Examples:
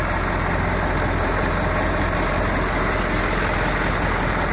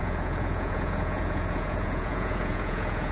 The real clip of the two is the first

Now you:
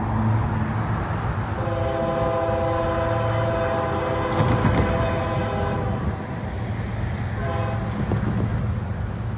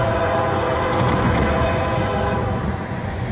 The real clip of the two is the first